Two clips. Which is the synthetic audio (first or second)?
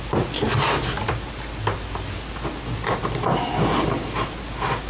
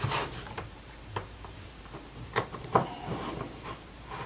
second